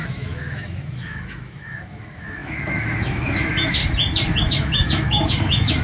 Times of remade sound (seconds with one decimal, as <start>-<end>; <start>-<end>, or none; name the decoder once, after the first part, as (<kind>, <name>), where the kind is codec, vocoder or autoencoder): 0.0-3.8 (autoencoder, DAC-VAE); 4.4-5.8